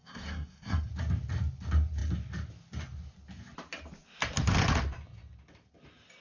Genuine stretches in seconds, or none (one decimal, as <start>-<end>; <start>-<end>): 0.9-6.2